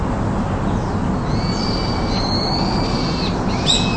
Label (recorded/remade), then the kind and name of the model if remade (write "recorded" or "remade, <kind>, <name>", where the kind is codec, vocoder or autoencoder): recorded